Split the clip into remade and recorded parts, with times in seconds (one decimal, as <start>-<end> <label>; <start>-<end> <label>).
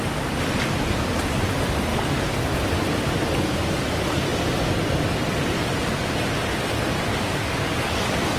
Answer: 0.0-1.9 recorded; 1.9-2.4 remade; 2.4-7.1 recorded; 7.1-8.4 remade